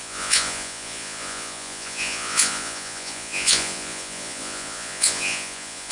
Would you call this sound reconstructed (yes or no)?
yes